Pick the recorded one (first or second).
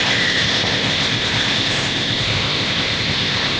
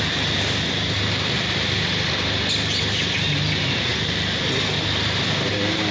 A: second